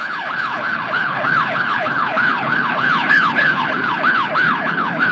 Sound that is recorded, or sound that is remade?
remade